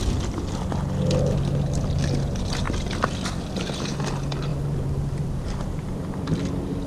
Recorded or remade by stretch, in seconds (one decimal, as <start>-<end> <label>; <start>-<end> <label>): 0.0-4.5 recorded; 4.5-6.1 remade; 6.1-6.9 recorded